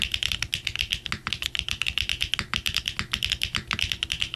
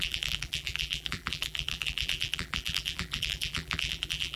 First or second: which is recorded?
first